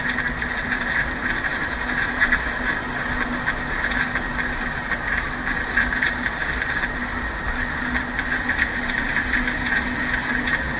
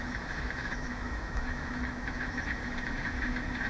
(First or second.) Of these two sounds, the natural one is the first